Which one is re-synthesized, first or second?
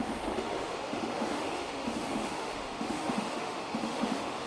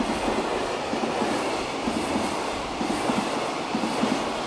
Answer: first